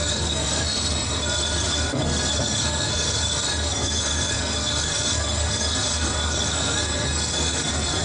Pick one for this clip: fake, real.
fake